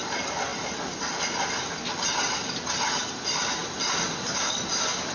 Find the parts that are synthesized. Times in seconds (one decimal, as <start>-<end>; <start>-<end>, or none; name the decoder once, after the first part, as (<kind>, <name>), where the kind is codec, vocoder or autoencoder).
0.0-5.1 (vocoder, BigVGAN v2)